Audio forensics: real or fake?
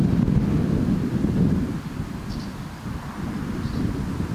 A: real